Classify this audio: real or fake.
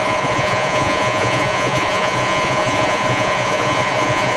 fake